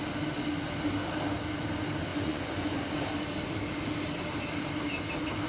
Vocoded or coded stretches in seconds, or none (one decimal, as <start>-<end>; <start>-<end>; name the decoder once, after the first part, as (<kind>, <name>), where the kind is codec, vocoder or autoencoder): 2.1-2.8 (vocoder, Vocos)